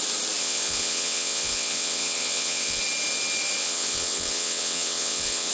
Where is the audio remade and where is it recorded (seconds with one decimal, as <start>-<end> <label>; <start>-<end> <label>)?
0.0-0.4 recorded; 0.4-2.8 remade; 2.8-3.6 recorded; 3.6-5.5 remade